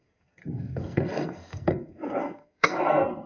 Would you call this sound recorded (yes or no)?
no